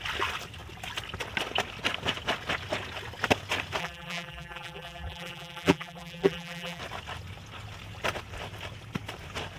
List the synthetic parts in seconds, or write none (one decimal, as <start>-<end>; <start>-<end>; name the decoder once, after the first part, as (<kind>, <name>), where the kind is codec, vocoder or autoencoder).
3.8-6.8 (vocoder, BigVGAN v2)